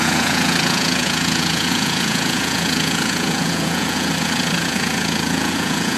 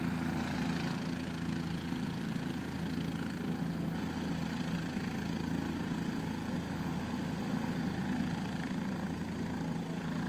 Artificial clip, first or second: first